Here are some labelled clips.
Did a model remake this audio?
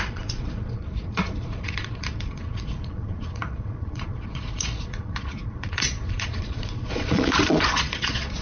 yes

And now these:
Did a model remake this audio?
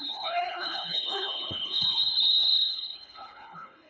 yes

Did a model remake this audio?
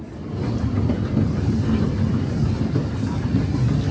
no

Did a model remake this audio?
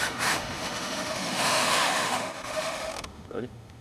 yes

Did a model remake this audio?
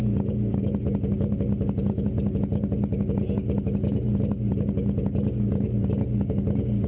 no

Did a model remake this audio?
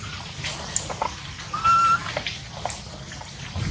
no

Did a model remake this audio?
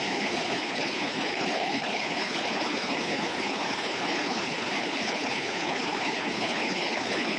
yes